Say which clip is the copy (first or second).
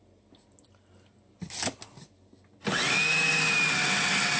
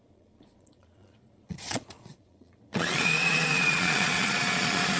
second